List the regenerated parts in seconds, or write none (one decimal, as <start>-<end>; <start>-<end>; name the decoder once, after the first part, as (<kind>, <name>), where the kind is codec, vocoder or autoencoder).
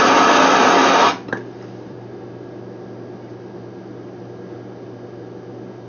none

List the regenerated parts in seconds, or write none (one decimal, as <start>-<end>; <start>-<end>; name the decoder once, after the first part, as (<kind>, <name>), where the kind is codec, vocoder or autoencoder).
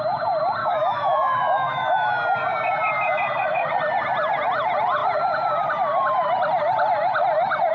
0.6-2.1 (autoencoder, DAC-VAE)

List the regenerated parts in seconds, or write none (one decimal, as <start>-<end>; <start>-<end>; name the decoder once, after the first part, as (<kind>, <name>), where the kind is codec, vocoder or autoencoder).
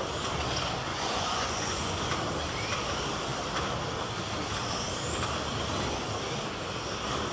0.9-2.0 (vocoder, Vocos)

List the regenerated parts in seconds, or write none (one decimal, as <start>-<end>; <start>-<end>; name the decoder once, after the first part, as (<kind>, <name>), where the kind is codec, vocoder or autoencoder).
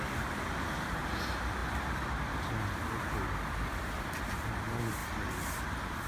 0.0-1.6 (vocoder, BigVGAN v2); 4.1-5.0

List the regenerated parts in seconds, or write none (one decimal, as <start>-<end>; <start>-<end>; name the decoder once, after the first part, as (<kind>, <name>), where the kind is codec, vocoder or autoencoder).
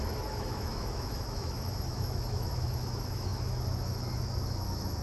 0.0-5.0 (autoencoder, DAC-VAE)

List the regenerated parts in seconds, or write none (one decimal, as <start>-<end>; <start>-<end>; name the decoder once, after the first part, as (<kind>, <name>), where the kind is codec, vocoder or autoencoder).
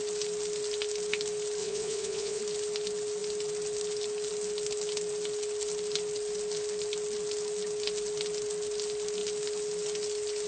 1.6-2.4 (vocoder, Vocos)